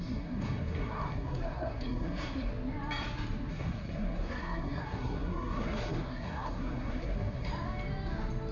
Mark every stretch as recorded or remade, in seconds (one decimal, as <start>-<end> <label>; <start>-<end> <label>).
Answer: 0.0-2.5 remade; 2.5-3.5 recorded; 3.5-7.5 remade; 7.5-8.5 recorded